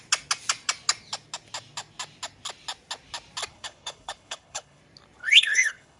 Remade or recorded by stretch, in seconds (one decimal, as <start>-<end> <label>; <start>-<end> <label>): 0.0-3.5 recorded; 3.5-4.8 remade; 4.8-5.2 recorded; 5.2-6.0 remade